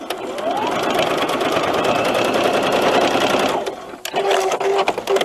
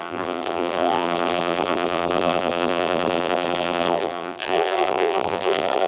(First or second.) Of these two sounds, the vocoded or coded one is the second